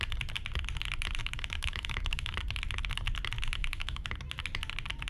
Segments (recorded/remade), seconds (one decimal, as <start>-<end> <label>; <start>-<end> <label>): 0.0-1.2 recorded; 1.2-2.3 remade; 2.3-3.6 recorded; 3.6-4.1 remade; 4.1-5.1 recorded

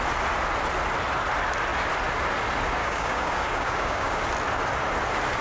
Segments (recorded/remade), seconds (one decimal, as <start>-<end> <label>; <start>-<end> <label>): 0.0-2.8 recorded; 2.8-4.2 remade; 4.2-5.4 recorded

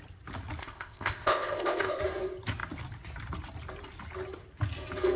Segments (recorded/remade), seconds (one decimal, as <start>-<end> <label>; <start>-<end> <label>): 0.0-0.6 recorded; 0.6-2.0 remade; 2.0-5.2 recorded

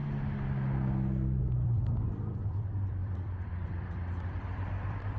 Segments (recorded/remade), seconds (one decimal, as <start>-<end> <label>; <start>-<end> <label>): 0.0-1.4 recorded; 1.4-5.2 remade

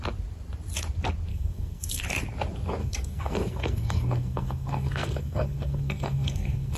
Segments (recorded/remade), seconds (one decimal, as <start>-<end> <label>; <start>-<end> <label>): 0.0-1.3 recorded; 1.3-2.0 remade; 2.0-2.8 recorded; 2.8-6.8 remade

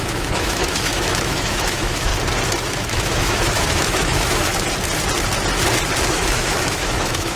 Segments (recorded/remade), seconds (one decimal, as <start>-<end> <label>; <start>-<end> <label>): 0.0-2.1 remade; 2.1-2.7 recorded; 2.7-4.5 remade; 4.5-6.1 recorded; 6.1-7.4 remade

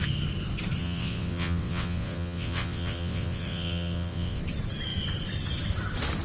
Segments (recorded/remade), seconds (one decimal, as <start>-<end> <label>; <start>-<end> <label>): 0.0-0.8 recorded; 0.8-4.4 remade; 4.4-6.2 recorded